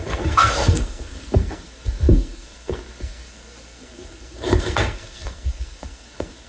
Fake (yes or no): yes